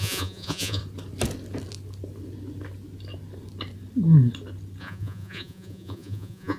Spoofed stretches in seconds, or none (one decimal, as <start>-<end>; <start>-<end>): 0.0-0.8; 4.8-6.6